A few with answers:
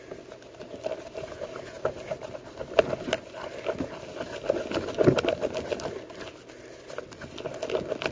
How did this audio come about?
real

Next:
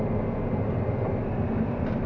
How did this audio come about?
real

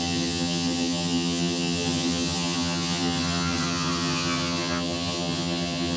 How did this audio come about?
fake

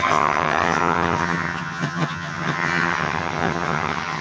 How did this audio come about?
fake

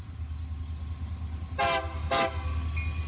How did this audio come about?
real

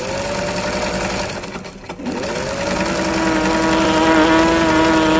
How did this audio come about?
real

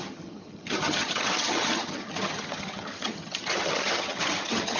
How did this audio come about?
fake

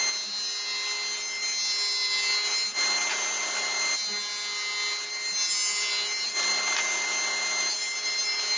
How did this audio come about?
real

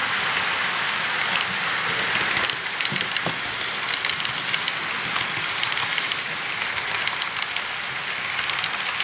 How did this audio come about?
real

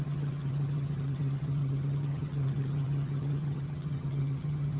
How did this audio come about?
fake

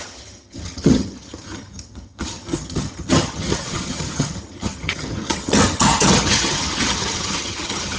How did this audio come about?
fake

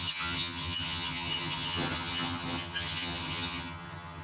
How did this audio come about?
fake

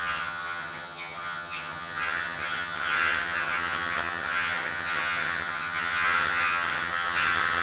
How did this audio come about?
fake